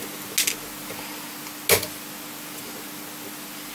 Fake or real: real